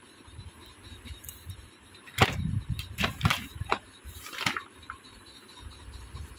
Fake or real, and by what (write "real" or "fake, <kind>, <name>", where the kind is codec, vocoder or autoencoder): fake, vocoder, BigVGAN v2